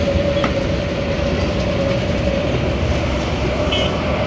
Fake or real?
real